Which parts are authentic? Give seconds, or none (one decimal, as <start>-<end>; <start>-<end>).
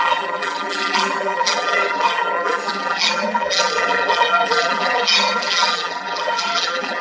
none